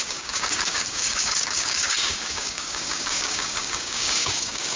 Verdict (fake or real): fake